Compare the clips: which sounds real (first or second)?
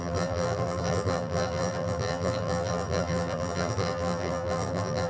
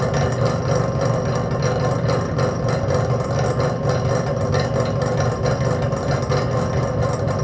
second